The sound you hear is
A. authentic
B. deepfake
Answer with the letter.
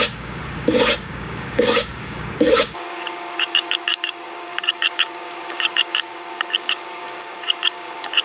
B